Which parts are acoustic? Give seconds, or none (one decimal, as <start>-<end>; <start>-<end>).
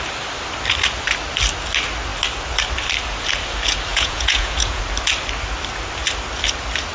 0.0-3.9; 4.8-6.9